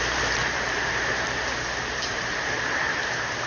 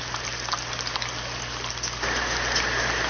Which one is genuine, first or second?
second